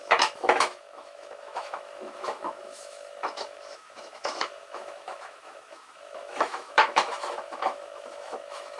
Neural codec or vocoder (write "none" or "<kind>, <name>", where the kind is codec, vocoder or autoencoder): autoencoder, DAC-VAE